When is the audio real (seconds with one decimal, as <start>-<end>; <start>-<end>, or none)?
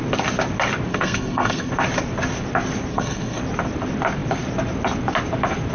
0.0-0.9; 1.7-2.9; 3.4-5.7